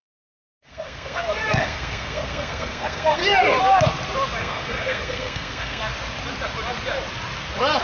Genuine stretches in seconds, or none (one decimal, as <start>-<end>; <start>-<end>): 3.2-4.4; 5.8-7.8